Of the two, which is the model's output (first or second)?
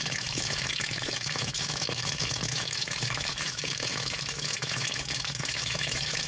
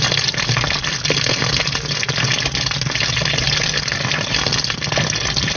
first